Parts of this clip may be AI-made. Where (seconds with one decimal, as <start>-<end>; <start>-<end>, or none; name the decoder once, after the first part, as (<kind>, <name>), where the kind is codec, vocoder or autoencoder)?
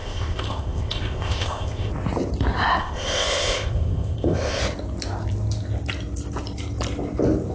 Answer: 0.0-1.9 (codec, ZipCodec); 2.8-4.6